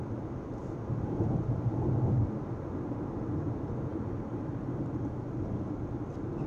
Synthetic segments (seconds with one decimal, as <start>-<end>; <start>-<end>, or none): 0.6-1.4; 3.9-5.7